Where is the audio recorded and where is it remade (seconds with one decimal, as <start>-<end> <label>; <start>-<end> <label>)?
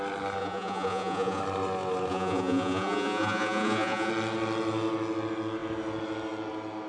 0.0-0.4 recorded; 0.4-1.4 remade; 1.4-2.1 recorded; 2.1-4.1 remade; 4.1-6.9 recorded